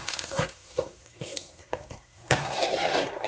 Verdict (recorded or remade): remade